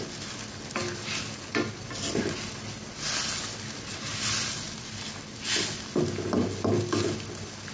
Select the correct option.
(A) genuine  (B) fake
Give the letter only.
A